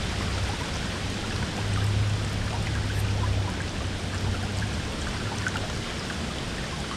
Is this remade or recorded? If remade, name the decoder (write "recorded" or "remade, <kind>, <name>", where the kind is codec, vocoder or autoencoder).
recorded